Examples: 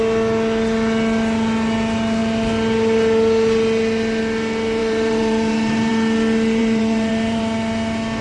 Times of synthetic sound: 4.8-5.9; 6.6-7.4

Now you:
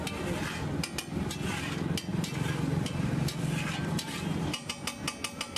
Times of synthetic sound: 2.1-4.7

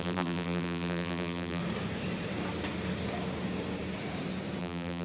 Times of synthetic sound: 0.0-1.6; 4.6-5.0

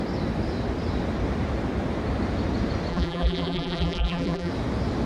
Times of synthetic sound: 2.9-4.5

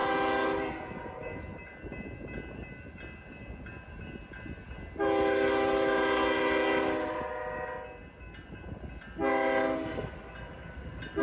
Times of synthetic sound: none